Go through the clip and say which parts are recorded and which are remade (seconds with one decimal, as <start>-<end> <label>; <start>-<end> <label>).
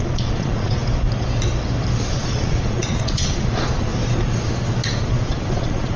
0.0-0.8 remade; 0.8-2.1 recorded; 2.1-3.9 remade; 3.9-5.0 recorded; 5.0-6.0 remade